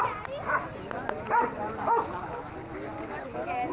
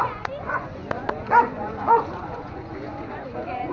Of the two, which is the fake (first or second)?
second